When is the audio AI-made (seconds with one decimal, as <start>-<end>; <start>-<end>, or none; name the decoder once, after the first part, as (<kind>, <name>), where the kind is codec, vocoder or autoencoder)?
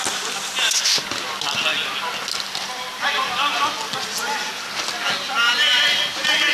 none